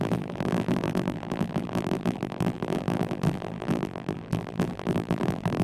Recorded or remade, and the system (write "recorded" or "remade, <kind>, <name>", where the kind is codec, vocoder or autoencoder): remade, vocoder, BigVGAN v2